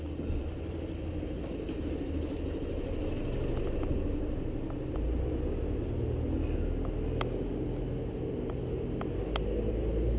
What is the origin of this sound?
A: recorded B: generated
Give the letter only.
A